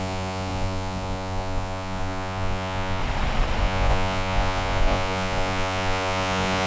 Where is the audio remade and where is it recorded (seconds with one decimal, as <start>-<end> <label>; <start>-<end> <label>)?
0.0-3.0 remade; 3.0-3.6 recorded; 3.6-6.7 remade